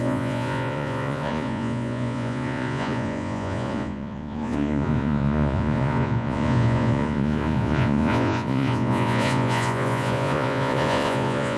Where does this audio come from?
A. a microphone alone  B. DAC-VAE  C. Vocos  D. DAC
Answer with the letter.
C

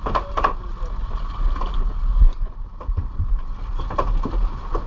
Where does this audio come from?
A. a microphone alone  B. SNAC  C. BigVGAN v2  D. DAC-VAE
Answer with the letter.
A